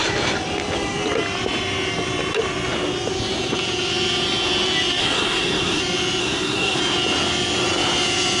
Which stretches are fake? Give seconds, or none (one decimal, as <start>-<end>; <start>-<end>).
5.0-5.8; 6.2-6.8